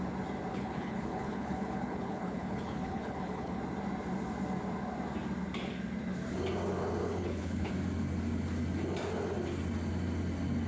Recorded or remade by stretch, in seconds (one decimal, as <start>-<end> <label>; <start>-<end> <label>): 0.0-0.5 recorded; 0.5-3.6 remade; 3.6-7.0 recorded; 7.0-7.7 remade; 7.7-10.7 recorded

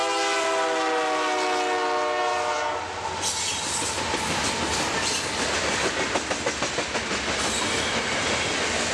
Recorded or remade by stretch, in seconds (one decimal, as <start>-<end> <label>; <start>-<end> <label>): 0.0-8.9 recorded

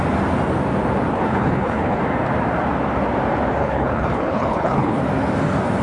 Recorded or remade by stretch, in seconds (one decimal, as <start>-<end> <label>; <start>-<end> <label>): 0.0-1.1 recorded; 1.1-2.0 remade; 2.0-3.6 recorded; 3.6-5.0 remade; 5.0-5.8 recorded

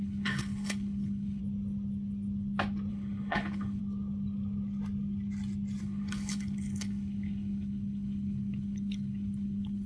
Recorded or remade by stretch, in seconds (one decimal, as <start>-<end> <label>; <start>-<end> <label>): 0.0-1.4 remade; 1.4-2.9 recorded; 2.9-3.8 remade; 3.8-5.8 recorded; 5.8-9.9 remade

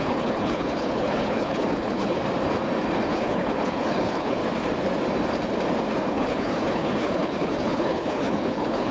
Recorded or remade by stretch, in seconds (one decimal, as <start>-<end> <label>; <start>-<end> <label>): 0.0-2.2 remade; 2.2-3.1 recorded; 3.1-4.4 remade; 4.4-6.1 recorded; 6.1-8.9 remade